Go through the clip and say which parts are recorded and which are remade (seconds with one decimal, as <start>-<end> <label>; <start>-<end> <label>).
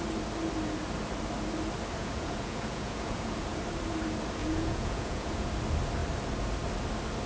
0.0-2.0 recorded; 2.0-3.6 remade; 3.6-4.4 recorded; 4.4-5.5 remade; 5.5-7.3 recorded